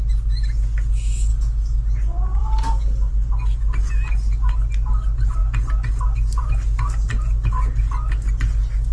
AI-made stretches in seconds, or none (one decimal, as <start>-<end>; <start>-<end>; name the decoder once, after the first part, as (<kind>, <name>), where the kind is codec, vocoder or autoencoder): 1.3-1.8 (codec, DAC); 2.4-3.1